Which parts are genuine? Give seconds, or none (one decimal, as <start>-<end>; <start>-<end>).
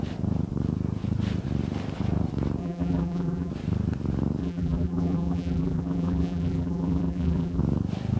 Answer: 0.0-2.6; 3.5-4.4; 7.6-8.2